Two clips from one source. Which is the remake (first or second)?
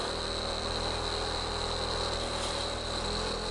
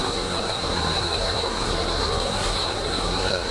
second